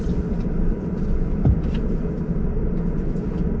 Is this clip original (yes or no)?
yes